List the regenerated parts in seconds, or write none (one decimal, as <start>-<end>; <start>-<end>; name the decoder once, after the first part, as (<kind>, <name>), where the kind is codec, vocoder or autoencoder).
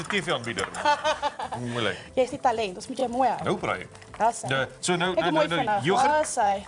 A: 0.0-3.0 (vocoder, BigVGAN v2); 4.2-6.7